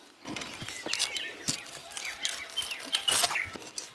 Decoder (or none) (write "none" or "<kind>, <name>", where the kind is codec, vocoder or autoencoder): none